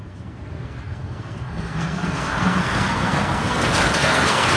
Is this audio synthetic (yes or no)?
yes